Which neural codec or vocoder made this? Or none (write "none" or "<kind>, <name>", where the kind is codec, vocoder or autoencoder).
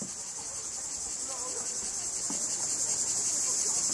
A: none